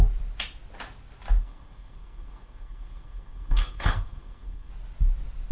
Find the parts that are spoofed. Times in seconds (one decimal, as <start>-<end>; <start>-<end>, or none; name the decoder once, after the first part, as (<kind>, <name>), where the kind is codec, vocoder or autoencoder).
1.4-4.7 (codec, SNAC)